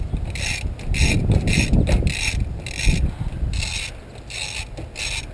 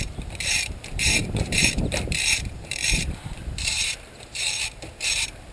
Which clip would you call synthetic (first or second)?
second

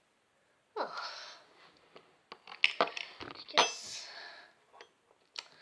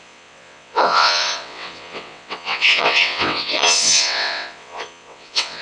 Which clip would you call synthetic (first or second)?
second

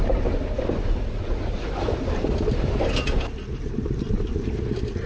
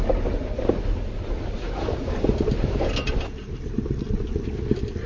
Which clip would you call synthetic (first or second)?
first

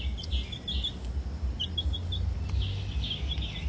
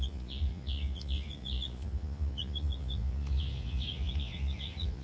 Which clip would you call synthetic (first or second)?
second